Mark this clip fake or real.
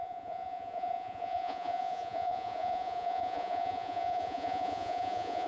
fake